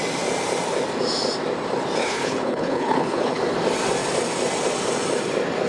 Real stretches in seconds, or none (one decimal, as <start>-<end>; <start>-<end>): 0.0-2.0; 3.4-5.7